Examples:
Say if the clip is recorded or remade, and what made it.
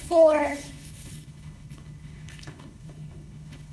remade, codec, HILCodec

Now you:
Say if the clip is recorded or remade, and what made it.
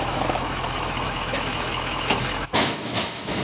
remade, autoencoder, DAC-VAE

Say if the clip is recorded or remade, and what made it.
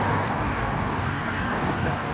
remade, codec, DAC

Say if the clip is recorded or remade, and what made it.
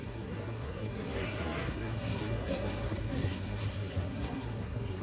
remade, codec, SNAC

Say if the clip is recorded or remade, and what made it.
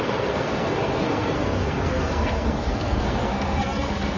remade, codec, SNAC